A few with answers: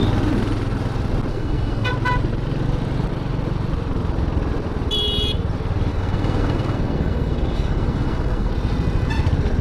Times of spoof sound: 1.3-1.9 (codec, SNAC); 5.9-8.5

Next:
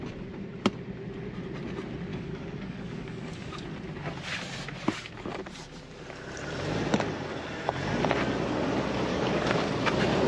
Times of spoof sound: 2.1-3.5 (codec, DAC); 9.1-9.7

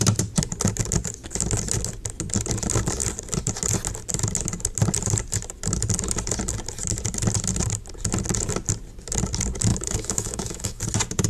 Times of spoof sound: 9.7-10.8 (autoencoder, DAC-VAE)

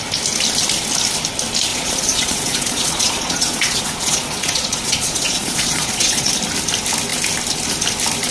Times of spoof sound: 1.7-6.3 (vocoder, Vocos)